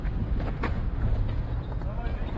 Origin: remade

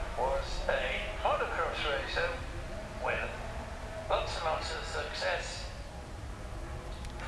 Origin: recorded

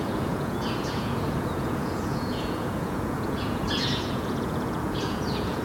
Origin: remade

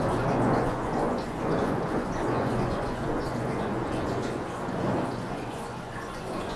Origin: remade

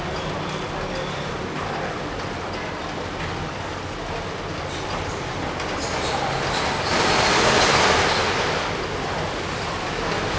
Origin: recorded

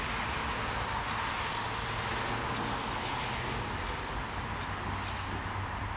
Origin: recorded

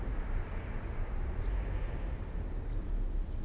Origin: recorded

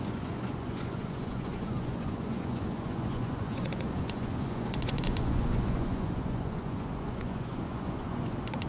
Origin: remade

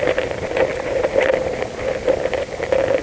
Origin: recorded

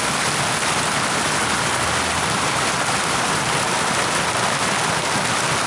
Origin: recorded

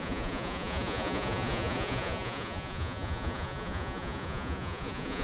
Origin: remade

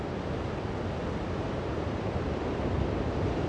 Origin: recorded